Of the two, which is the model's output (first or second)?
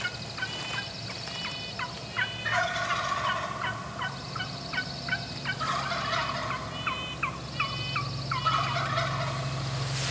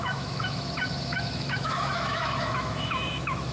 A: second